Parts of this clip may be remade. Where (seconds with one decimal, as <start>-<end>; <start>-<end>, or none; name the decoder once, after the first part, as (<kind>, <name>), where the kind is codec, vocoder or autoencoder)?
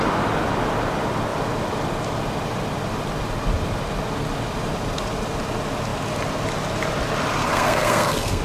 7.4-8.4 (codec, SNAC)